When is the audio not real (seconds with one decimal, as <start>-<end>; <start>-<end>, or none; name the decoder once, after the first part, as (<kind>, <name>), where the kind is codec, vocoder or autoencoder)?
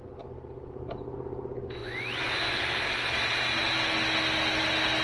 1.8-2.6 (vocoder, Vocos)